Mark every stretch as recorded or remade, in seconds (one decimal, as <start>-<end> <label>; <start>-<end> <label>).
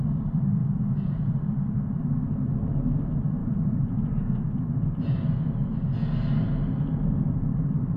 0.0-0.6 recorded; 0.6-1.3 remade; 1.3-3.4 recorded; 3.4-4.5 remade; 4.5-8.0 recorded